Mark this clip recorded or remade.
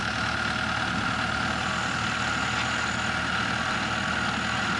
recorded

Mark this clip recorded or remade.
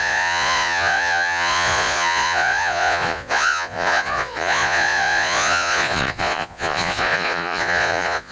remade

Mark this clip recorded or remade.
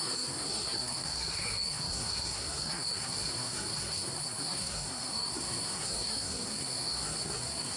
remade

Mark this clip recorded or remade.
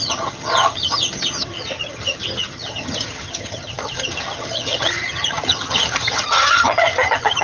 remade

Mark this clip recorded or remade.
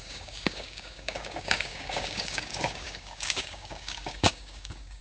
remade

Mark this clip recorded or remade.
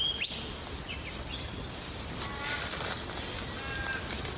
recorded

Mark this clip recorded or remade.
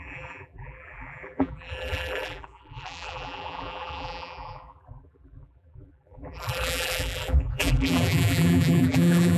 remade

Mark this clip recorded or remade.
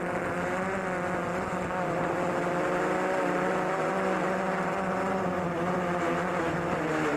recorded